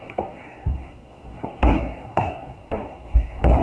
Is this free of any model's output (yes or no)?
no